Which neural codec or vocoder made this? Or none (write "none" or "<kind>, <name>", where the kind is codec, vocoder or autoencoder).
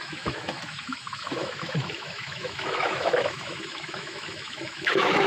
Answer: autoencoder, DAC-VAE